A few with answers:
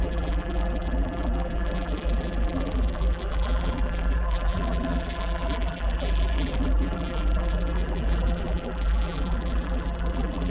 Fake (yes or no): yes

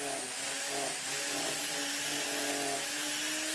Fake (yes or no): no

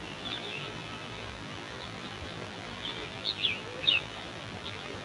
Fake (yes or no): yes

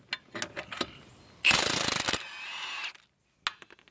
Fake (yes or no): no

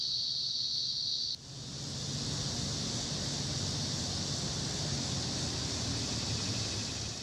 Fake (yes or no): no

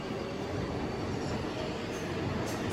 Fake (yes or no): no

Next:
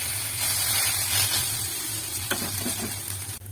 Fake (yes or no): yes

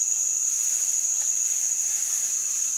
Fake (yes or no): no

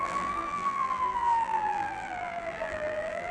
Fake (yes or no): yes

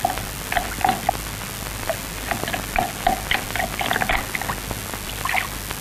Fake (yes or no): no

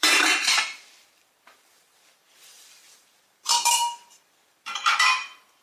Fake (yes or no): yes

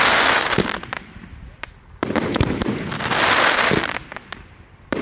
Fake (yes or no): yes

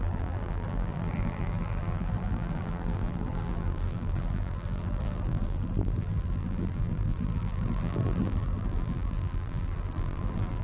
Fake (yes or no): yes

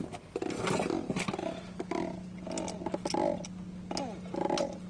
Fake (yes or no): no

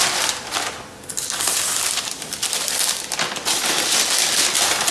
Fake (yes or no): no